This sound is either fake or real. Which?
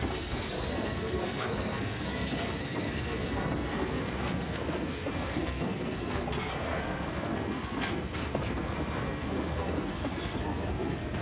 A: fake